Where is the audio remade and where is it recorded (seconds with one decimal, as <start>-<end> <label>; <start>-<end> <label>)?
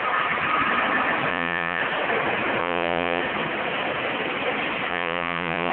0.0-1.3 recorded; 1.3-1.8 remade; 1.8-2.6 recorded; 2.6-3.2 remade; 3.2-4.9 recorded; 4.9-5.7 remade